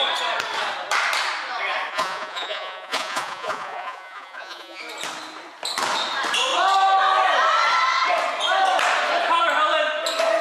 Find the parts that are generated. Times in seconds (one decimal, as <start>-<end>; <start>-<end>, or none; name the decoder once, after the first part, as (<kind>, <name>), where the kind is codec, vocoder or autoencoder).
1.9-4.8 (vocoder, Vocos)